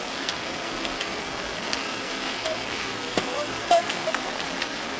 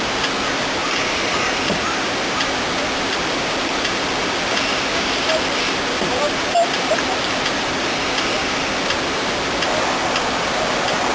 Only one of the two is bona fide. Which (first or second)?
second